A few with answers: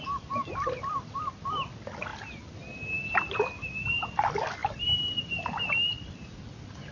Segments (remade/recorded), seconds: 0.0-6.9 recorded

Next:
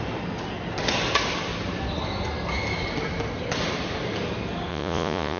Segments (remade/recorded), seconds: 0.0-4.7 recorded; 4.7-5.4 remade

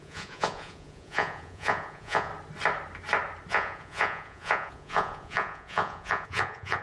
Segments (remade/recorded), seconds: 0.0-2.3 remade; 2.3-3.5 recorded; 3.5-6.8 remade

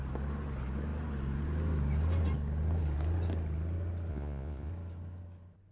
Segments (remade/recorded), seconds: 0.0-4.1 recorded; 4.1-4.7 remade; 4.7-5.7 recorded